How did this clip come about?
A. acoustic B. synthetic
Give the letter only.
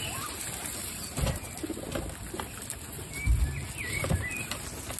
A